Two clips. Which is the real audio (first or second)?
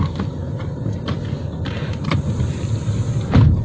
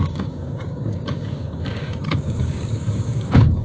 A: first